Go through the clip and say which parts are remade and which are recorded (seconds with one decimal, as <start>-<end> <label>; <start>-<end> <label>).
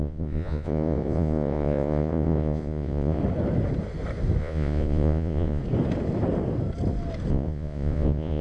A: 0.0-3.2 remade; 3.2-4.4 recorded; 4.4-5.6 remade; 5.6-7.3 recorded; 7.3-8.4 remade